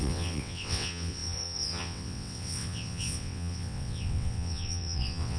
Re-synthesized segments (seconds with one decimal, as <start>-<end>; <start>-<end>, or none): 0.0-5.4